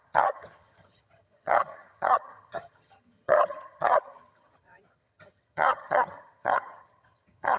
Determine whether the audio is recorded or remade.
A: remade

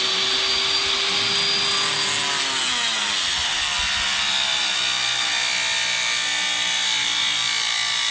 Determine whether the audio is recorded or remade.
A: recorded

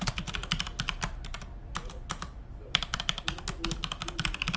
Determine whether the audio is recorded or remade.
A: recorded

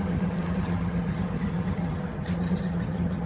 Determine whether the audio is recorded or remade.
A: remade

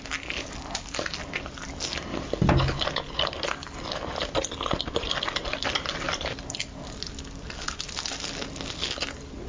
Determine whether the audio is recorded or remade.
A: recorded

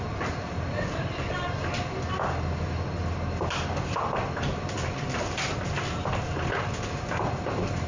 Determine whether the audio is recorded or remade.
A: recorded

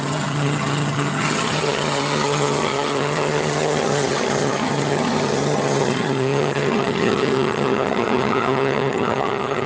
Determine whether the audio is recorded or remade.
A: remade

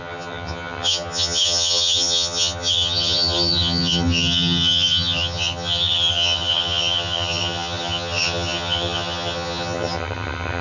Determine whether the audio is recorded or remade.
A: remade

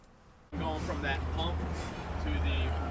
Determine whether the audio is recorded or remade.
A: recorded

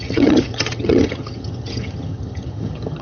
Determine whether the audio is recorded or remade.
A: remade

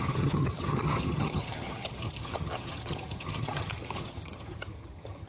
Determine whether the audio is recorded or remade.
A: remade